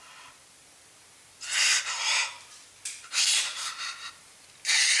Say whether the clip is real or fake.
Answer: real